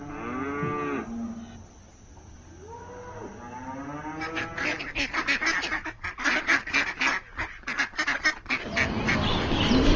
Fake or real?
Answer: real